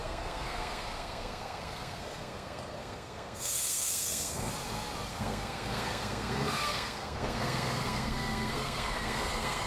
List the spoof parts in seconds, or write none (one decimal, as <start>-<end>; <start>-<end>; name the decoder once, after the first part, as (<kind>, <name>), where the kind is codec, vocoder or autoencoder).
0.0-4.5 (codec, SNAC); 5.1-9.7